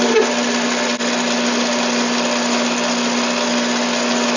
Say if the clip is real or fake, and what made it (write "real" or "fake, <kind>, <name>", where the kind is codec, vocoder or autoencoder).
real